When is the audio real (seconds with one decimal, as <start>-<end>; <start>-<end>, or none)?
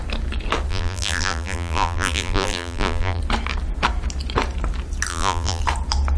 0.0-0.7; 3.2-5.1; 5.6-6.2